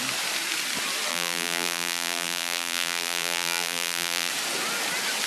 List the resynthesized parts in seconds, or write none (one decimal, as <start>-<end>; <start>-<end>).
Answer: 1.1-4.3